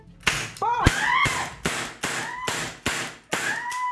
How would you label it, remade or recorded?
recorded